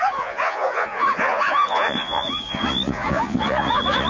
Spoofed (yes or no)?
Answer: yes